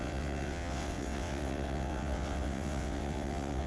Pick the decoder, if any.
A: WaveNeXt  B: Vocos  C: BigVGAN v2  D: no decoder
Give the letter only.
A